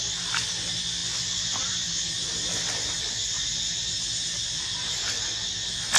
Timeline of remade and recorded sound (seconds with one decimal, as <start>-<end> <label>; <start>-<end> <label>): 0.0-1.0 recorded; 1.0-2.1 remade; 2.1-3.8 recorded; 3.8-5.3 remade; 5.3-6.0 recorded